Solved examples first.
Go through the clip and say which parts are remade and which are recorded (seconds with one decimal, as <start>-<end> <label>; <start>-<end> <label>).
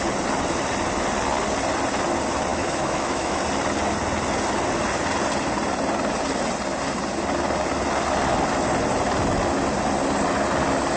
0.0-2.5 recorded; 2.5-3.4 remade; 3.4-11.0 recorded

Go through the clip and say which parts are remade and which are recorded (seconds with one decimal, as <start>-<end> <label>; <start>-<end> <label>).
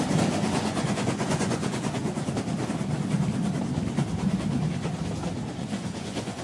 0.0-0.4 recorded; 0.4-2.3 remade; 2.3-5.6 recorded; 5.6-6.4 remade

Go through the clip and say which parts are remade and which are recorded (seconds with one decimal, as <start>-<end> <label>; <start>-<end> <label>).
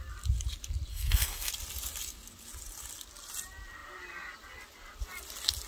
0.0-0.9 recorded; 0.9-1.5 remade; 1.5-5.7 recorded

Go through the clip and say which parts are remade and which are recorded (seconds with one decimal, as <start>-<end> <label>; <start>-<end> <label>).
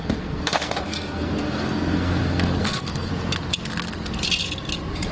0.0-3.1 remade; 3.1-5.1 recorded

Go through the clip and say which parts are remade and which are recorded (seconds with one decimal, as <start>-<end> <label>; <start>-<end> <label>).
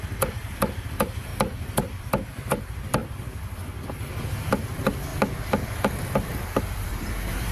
0.0-1.3 remade; 1.3-2.0 recorded; 2.0-3.0 remade; 3.0-4.4 recorded; 4.4-5.1 remade; 5.1-6.6 recorded; 6.6-7.5 remade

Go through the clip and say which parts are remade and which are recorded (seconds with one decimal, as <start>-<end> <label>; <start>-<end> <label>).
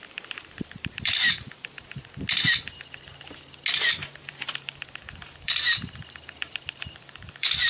0.0-2.1 remade; 2.1-4.0 recorded; 4.0-7.7 remade